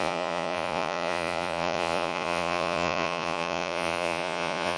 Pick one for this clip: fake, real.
fake